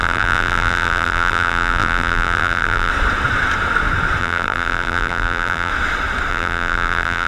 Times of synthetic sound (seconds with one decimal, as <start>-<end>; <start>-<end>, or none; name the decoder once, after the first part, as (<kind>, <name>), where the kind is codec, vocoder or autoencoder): 0.0-2.9 (vocoder, BigVGAN v2); 4.2-5.7; 6.3-7.3